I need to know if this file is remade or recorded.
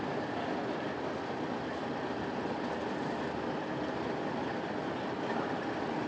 recorded